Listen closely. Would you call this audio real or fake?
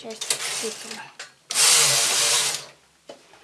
real